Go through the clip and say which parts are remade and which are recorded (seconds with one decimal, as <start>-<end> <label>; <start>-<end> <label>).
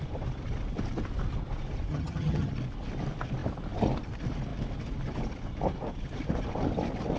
0.0-1.9 recorded; 1.9-2.5 remade; 2.5-7.2 recorded